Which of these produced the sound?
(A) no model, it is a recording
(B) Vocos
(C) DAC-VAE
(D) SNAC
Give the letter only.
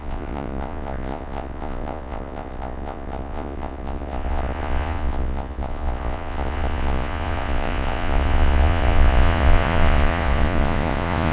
B